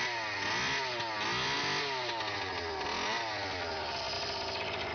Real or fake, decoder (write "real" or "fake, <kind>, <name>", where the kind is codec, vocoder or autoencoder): real